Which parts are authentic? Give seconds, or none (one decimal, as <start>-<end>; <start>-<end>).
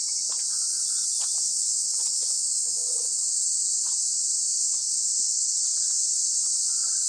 0.0-1.4; 3.2-4.6; 5.6-7.1